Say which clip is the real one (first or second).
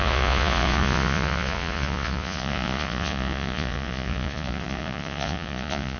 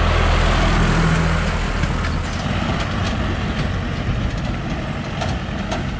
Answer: second